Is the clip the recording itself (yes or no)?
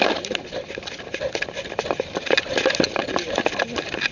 yes